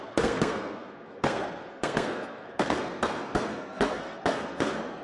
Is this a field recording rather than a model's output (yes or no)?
no